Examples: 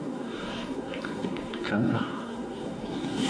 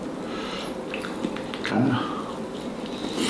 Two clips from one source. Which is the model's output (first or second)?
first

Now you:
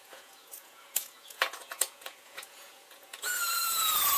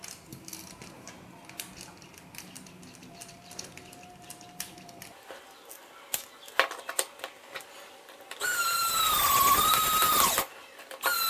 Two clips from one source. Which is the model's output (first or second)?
first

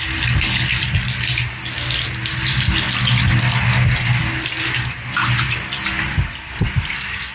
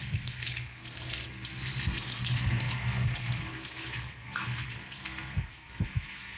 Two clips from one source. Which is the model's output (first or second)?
second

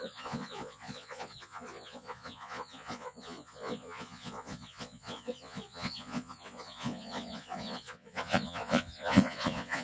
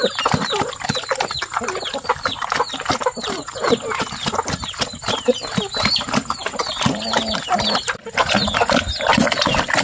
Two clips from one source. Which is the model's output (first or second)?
first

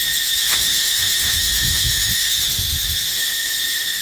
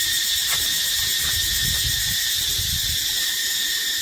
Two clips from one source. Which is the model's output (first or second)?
first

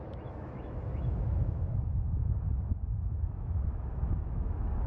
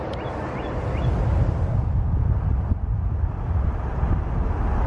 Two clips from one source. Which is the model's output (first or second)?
first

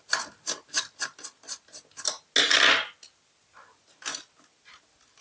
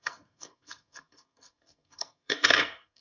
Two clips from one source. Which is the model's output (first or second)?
second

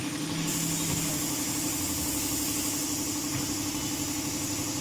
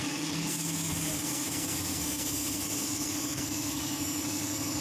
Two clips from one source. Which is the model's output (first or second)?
second